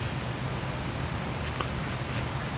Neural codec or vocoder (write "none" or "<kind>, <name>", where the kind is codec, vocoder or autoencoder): none